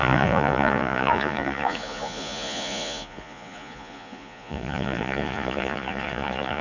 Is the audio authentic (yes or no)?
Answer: no